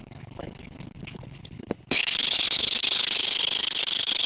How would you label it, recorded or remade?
remade